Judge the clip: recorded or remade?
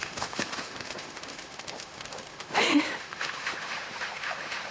remade